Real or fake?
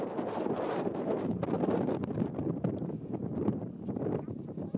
real